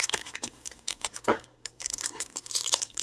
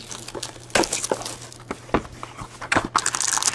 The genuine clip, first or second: second